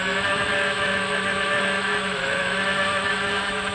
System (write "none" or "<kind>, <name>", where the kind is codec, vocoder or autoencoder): autoencoder, DAC-VAE